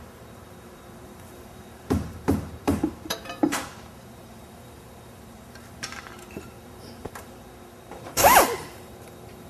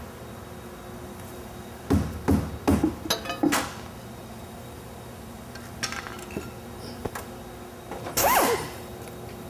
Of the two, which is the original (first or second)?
second